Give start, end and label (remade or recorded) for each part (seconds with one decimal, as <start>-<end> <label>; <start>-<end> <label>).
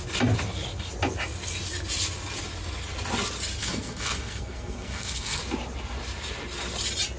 0.0-3.6 recorded; 3.6-5.4 remade; 5.4-7.2 recorded